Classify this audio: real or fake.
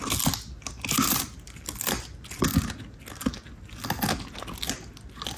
real